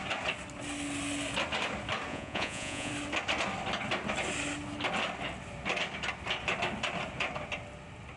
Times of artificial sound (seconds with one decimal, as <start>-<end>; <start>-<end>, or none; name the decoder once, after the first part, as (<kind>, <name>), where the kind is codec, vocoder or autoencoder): 2.1-2.9 (vocoder, Vocos)